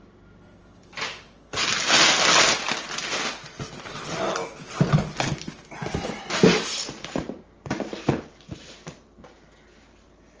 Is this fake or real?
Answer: real